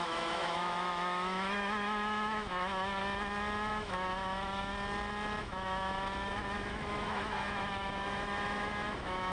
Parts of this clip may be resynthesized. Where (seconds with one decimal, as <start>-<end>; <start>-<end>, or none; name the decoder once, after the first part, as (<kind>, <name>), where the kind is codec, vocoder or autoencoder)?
0.0-3.0 (autoencoder, DAC-VAE); 3.7-4.7; 5.4-9.3